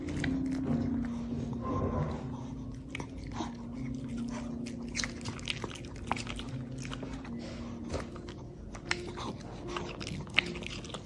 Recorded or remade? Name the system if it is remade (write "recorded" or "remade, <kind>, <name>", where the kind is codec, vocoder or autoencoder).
recorded